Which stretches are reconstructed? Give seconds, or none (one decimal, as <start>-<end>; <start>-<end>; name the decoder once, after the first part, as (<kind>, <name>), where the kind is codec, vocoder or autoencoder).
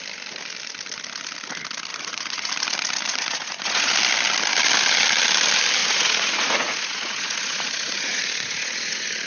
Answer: 1.9-2.5 (vocoder, Vocos); 3.1-3.9; 5.8-9.3